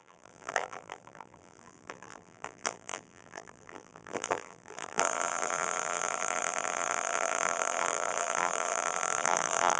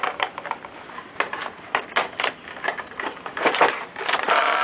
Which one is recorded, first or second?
second